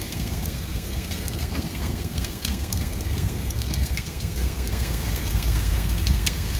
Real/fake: fake